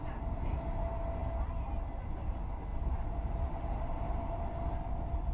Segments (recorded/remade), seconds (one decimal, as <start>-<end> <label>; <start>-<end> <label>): 0.0-2.7 recorded; 2.7-4.4 remade; 4.4-5.3 recorded